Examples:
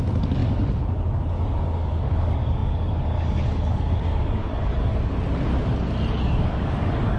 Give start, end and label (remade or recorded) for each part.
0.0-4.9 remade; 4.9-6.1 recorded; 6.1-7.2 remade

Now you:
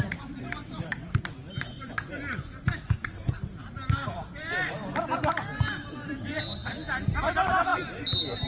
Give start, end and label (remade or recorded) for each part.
0.0-0.6 recorded; 0.6-1.2 remade; 1.2-8.5 recorded

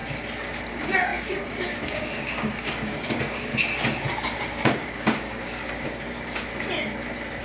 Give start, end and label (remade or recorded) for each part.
0.0-0.7 recorded; 0.7-3.5 remade; 3.5-4.4 recorded; 4.4-6.5 remade; 6.5-7.4 recorded

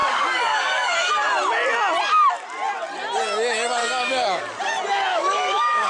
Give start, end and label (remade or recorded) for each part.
0.0-1.1 remade; 1.1-3.8 recorded; 3.8-4.4 remade; 4.4-5.1 recorded; 5.1-5.9 remade

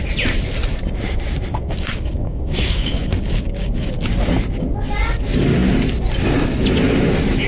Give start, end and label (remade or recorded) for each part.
0.0-1.5 recorded; 1.5-3.9 remade; 3.9-7.5 recorded

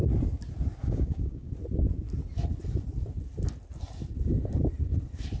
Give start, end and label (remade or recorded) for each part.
0.0-0.8 recorded; 0.8-1.5 remade; 1.5-5.4 recorded

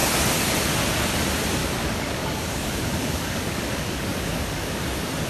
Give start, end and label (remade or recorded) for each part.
0.0-1.6 recorded; 1.6-4.8 remade; 4.8-5.3 recorded